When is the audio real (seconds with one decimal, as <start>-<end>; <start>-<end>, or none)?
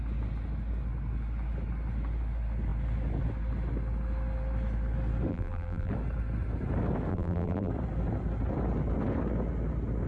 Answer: 0.0-5.3; 5.9-7.1; 7.7-10.1